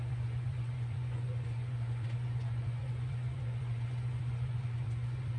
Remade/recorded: remade